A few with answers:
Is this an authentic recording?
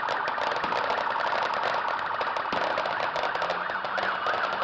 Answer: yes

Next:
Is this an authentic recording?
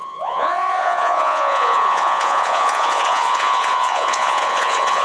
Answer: no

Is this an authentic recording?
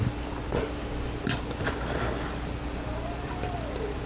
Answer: yes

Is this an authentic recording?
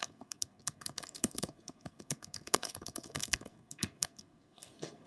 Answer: no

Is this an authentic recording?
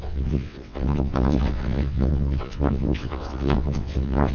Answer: no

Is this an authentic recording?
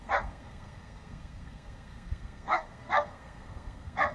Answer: no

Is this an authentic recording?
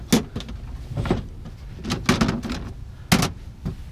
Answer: yes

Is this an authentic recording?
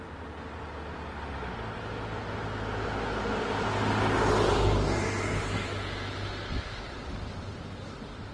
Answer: yes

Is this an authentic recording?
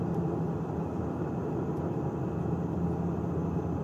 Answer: yes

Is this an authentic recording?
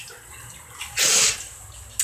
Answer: yes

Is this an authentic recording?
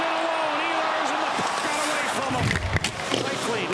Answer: yes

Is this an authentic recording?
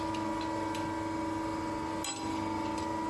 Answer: yes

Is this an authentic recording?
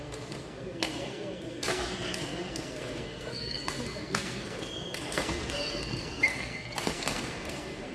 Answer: no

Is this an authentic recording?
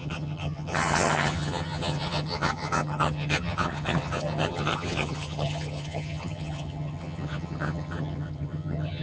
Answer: no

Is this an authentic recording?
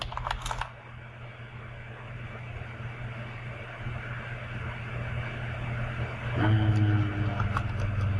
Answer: yes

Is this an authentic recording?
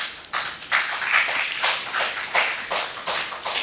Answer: yes